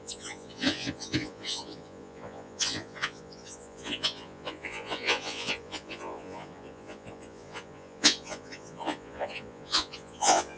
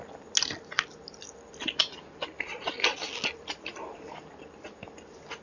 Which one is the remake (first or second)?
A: first